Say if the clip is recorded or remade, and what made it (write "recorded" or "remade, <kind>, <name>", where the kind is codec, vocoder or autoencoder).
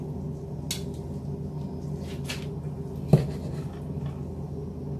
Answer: recorded